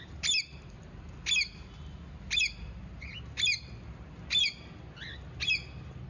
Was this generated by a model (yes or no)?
no